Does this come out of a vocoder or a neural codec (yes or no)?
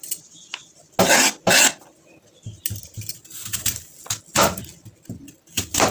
no